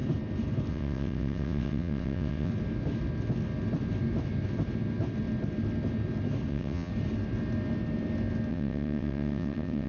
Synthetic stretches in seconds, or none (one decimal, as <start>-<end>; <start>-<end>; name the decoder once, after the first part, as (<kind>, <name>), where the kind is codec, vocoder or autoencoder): 0.7-2.5 (vocoder, WaveNeXt); 6.5-6.9; 8.5-9.9